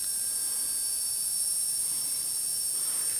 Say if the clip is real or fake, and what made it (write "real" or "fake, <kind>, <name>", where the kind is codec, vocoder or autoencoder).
fake, vocoder, BigVGAN v2